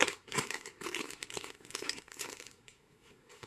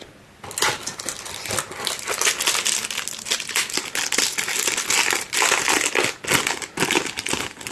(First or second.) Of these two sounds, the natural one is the second